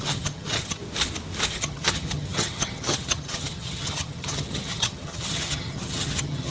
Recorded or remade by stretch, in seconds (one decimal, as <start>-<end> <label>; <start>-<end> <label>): 0.0-0.8 remade; 0.8-1.5 recorded; 1.5-6.5 remade